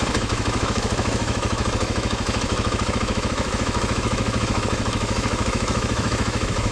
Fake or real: fake